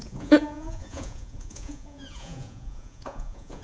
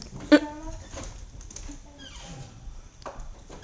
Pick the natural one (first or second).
second